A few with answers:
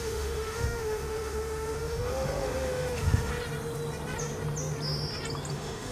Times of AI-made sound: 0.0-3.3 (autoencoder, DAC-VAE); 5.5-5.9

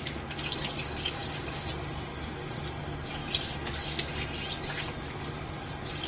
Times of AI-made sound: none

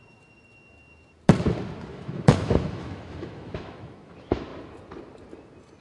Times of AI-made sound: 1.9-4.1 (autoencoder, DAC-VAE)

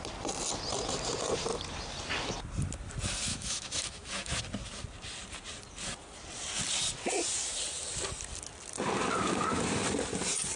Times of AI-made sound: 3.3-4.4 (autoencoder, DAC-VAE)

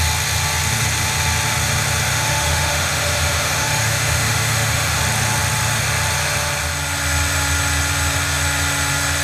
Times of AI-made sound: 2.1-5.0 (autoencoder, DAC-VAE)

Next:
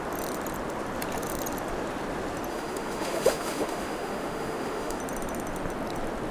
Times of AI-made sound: 2.5-5.0 (autoencoder, DAC-VAE)

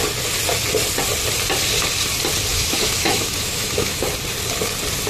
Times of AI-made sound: 2.5-4.1 (autoencoder, DAC-VAE)

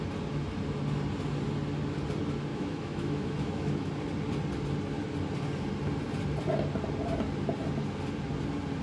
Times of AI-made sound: 2.5-3.9 (autoencoder, DAC-VAE)